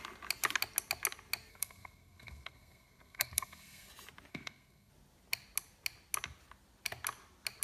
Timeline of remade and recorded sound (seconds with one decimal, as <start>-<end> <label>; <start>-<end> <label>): 0.0-1.5 recorded; 1.5-3.9 remade; 3.9-4.3 recorded; 4.3-4.9 remade; 4.9-7.6 recorded